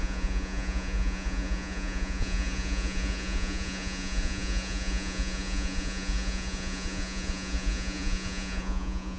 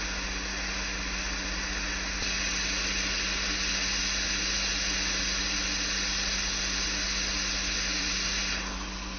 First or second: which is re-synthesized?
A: first